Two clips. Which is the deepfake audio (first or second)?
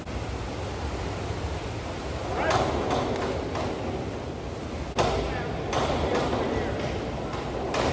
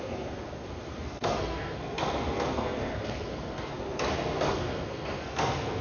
second